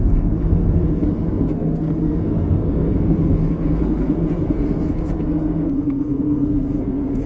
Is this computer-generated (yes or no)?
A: yes